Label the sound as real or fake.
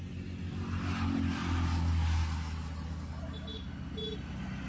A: real